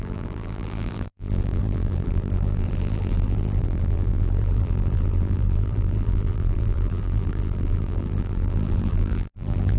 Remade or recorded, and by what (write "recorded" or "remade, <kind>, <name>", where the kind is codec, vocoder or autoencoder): remade, vocoder, BigVGAN v2